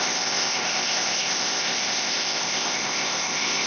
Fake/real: fake